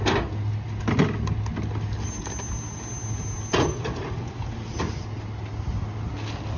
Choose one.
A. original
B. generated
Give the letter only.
A